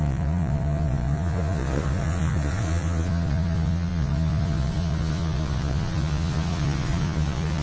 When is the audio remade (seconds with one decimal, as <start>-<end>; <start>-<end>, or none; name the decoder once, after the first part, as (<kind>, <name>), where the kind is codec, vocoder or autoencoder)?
0.0-7.6 (vocoder, Vocos)